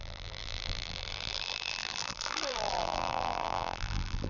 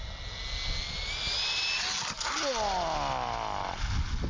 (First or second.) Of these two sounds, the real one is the second